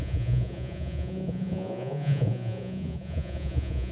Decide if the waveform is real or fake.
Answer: fake